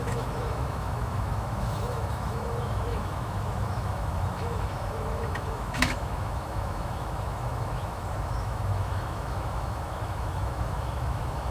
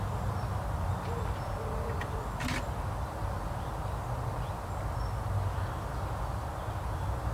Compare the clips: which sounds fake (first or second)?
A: first